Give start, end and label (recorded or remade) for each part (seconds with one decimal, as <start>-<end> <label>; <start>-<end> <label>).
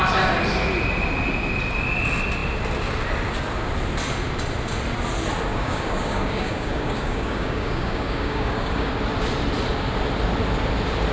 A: 0.0-5.5 recorded; 5.5-8.9 remade; 8.9-11.1 recorded